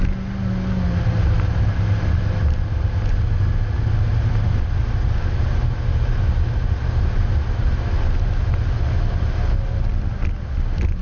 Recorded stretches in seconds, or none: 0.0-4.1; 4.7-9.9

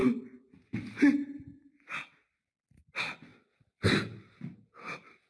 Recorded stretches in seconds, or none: 0.0-5.3

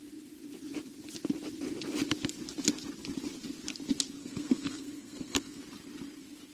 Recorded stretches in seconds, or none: 0.0-4.2; 5.6-6.5

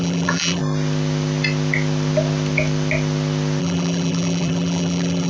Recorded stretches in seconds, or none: 0.6-3.6

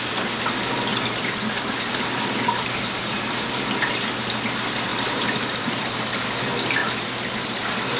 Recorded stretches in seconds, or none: 0.0-0.9; 3.3-4.9; 6.0-6.8; 7.6-8.0

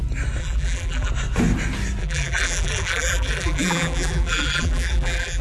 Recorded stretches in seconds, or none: 0.0-0.4; 1.1-2.0